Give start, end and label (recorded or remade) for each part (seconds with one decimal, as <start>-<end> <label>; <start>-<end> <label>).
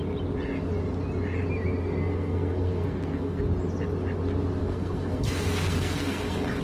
0.0-2.0 recorded; 2.0-3.4 remade; 3.4-4.6 recorded; 4.6-6.6 remade